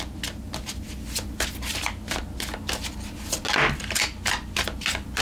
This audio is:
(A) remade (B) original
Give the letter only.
B